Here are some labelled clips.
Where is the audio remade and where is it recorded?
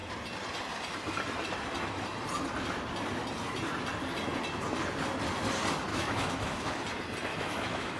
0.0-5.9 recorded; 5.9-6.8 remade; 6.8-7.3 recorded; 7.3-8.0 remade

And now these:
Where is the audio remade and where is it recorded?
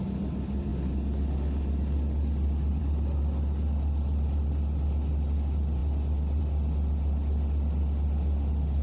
0.0-8.8 recorded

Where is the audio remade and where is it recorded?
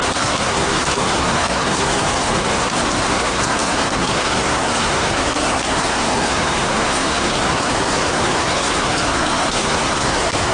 0.0-10.5 remade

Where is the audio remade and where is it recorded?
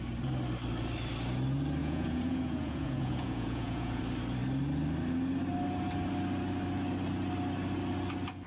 0.0-1.8 recorded; 1.8-4.0 remade; 4.0-8.5 recorded